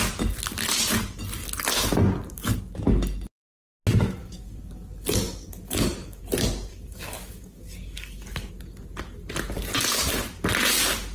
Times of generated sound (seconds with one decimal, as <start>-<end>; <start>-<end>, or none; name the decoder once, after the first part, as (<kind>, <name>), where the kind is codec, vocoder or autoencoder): 4.2-6.2 (codec, DAC); 6.7-8.5